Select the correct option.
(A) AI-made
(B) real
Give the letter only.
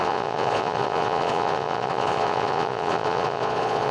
A